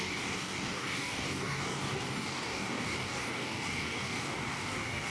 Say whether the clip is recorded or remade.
remade